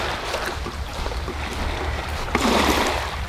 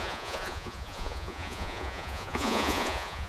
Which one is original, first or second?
first